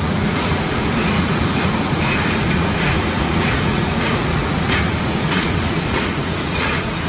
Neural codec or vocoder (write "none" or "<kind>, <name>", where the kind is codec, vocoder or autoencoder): vocoder, Vocos